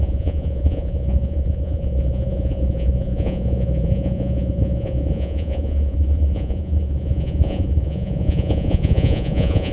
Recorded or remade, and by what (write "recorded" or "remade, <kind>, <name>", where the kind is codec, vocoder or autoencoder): remade, vocoder, Vocos